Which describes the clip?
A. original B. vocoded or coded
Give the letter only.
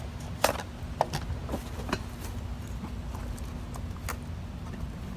A